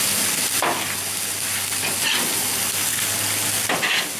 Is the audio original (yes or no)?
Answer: yes